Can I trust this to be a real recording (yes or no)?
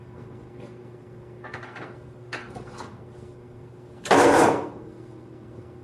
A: no